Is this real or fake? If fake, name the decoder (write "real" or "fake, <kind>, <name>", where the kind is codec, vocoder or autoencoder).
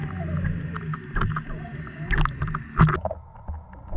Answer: real